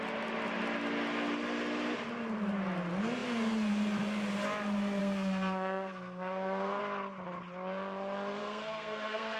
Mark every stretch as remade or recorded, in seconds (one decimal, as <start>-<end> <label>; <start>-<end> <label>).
0.0-5.0 recorded; 5.0-6.8 remade; 6.8-8.4 recorded; 8.4-9.4 remade